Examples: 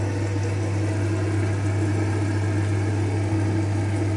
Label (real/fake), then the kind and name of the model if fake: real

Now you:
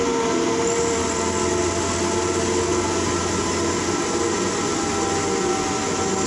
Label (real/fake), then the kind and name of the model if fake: real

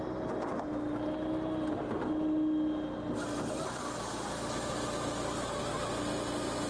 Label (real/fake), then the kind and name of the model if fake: real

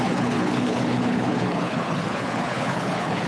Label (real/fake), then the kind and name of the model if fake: fake, codec, HILCodec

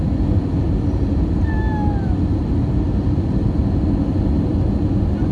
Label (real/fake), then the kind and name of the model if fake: real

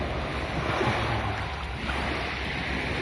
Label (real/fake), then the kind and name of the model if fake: real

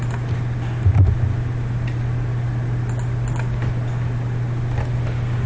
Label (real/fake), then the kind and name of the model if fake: real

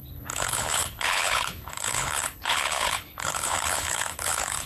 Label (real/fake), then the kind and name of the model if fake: fake, codec, HILCodec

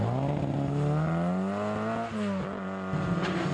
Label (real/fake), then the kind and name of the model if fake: real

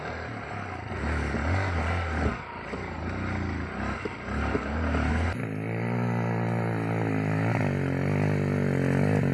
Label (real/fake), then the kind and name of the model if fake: real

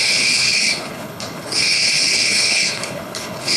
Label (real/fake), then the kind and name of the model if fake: fake, codec, HILCodec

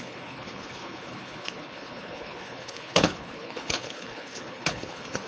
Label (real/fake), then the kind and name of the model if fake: fake, codec, HILCodec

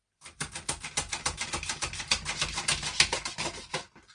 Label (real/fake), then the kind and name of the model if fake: real